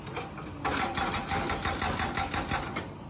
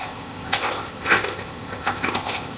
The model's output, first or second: second